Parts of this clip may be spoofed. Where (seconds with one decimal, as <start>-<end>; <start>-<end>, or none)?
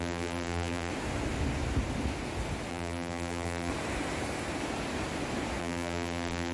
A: 0.0-0.9; 2.7-3.7; 5.6-6.5